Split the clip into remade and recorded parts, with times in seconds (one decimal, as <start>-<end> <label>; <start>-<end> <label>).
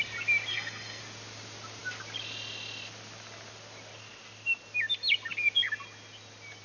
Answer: 0.0-0.5 recorded; 0.5-1.0 remade; 1.0-6.6 recorded